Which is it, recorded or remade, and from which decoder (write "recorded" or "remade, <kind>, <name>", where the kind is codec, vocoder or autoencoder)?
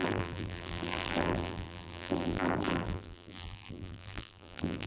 remade, vocoder, BigVGAN v2